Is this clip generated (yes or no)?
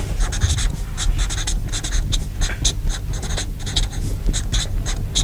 no